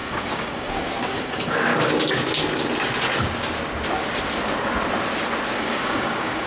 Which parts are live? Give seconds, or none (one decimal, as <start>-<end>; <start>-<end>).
1.7-5.6